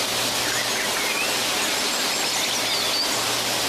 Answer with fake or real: real